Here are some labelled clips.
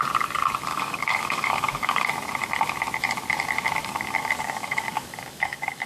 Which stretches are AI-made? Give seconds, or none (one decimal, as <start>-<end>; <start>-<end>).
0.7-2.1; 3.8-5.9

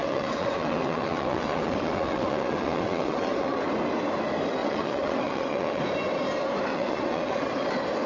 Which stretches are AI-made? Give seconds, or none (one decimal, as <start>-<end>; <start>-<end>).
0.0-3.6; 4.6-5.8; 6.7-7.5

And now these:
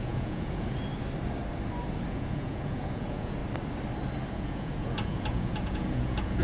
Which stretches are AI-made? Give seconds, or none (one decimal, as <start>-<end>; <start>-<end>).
0.0-0.9; 2.1-3.4; 4.3-6.4

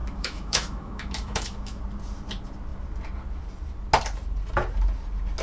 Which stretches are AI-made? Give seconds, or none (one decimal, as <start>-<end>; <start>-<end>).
0.0-1.8

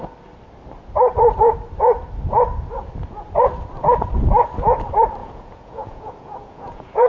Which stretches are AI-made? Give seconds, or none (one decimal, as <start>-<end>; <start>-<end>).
5.2-7.1

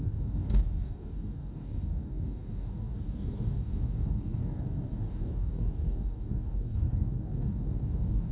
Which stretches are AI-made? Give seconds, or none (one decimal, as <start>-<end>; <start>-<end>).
0.0-8.3

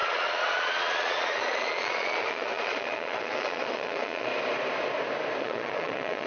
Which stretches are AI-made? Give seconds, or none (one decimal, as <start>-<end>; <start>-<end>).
0.0-4.3; 5.4-6.3

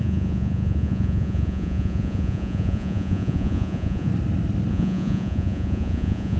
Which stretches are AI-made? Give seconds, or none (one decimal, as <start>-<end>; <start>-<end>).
0.0-4.1; 4.7-6.4